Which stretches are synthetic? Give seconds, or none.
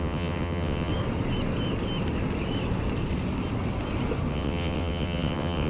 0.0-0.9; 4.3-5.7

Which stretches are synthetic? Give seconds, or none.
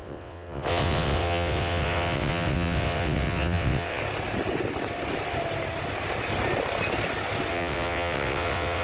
0.0-4.0; 7.5-8.8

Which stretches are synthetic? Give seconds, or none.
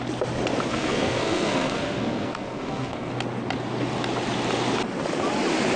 0.7-3.1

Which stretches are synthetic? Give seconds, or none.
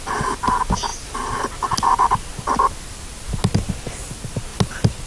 none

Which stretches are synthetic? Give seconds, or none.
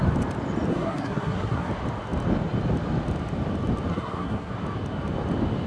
0.7-1.7; 3.9-4.5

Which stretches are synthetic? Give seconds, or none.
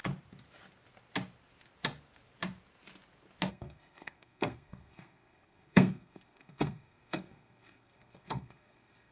3.5-9.1